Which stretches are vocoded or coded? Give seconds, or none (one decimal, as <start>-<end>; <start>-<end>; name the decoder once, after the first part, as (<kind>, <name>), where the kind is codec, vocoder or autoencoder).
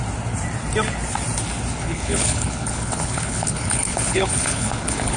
1.8-5.2 (codec, HILCodec)